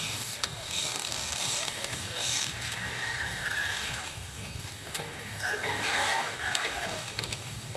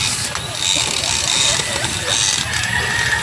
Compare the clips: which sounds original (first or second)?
second